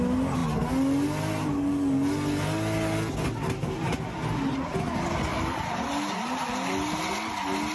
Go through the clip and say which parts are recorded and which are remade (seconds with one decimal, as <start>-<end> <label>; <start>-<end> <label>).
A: 0.0-5.3 recorded; 5.3-5.9 remade; 5.9-7.7 recorded

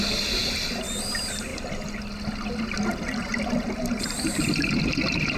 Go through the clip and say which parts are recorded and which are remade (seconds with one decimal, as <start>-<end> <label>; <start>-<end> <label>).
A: 0.0-5.4 recorded